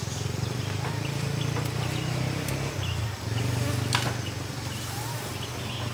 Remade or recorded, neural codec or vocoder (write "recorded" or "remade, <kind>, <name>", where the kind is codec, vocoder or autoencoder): recorded